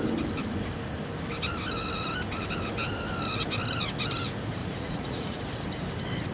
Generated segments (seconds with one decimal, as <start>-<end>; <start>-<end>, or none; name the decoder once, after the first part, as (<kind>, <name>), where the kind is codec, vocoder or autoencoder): 4.6-5.4 (vocoder, Vocos)